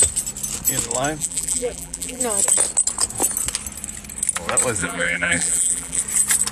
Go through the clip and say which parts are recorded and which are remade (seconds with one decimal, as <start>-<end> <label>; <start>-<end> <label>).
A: 0.0-1.2 recorded; 1.2-2.2 remade; 2.2-4.8 recorded; 4.8-6.0 remade; 6.0-6.5 recorded